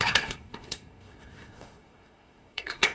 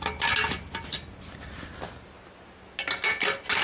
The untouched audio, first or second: second